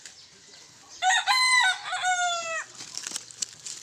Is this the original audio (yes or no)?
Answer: yes